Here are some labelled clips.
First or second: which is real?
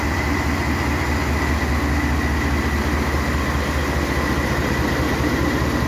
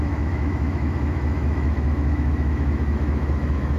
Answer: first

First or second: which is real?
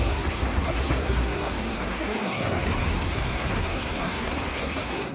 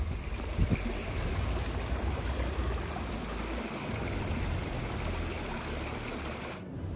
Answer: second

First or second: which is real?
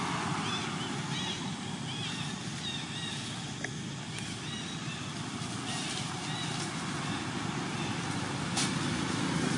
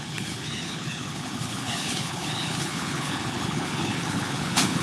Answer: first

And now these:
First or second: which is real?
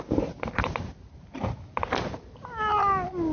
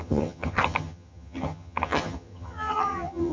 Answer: first